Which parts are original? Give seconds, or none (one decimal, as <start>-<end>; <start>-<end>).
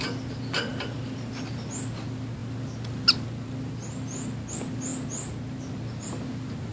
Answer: 0.0-6.7